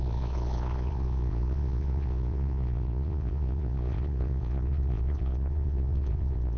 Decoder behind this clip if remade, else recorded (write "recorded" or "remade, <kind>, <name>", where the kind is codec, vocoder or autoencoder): remade, vocoder, Vocos